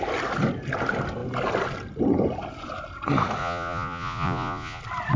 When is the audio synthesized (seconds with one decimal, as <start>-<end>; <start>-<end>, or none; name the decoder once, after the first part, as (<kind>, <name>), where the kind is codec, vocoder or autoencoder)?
3.4-4.8 (vocoder, Vocos)